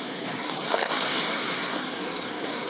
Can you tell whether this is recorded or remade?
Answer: remade